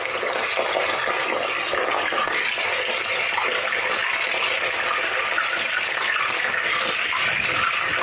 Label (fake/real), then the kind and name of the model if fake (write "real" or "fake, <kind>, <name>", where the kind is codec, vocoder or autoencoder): real